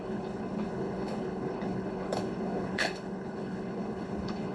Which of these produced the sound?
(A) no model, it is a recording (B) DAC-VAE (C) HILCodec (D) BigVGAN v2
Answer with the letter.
C